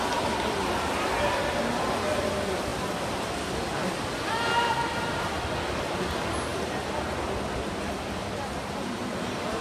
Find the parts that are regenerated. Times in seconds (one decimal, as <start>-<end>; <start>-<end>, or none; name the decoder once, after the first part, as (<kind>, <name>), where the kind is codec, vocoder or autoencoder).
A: none